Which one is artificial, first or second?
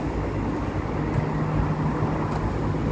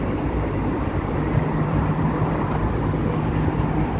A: second